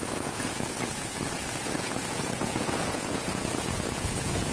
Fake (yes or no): yes